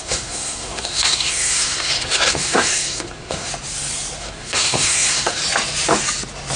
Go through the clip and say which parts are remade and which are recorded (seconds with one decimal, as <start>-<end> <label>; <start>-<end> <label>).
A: 0.0-3.5 remade; 3.5-4.2 recorded; 4.2-5.4 remade; 5.4-6.6 recorded